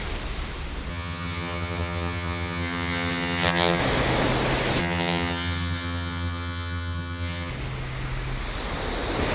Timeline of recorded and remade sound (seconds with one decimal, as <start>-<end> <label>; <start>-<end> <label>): 0.0-0.9 recorded; 0.9-3.8 remade; 3.8-4.8 recorded; 4.8-7.5 remade; 7.5-9.3 recorded